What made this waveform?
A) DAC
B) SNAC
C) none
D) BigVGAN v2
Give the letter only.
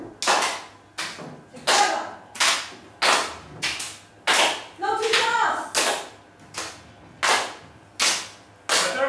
C